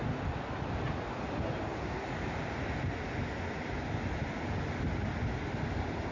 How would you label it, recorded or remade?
recorded